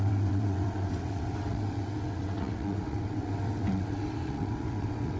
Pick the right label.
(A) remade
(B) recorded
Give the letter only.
A